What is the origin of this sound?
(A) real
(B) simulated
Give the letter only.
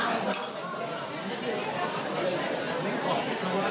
A